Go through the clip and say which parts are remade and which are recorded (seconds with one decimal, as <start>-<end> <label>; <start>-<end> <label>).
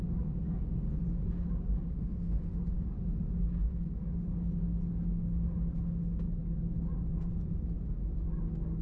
0.0-1.9 recorded; 1.9-2.6 remade; 2.6-8.8 recorded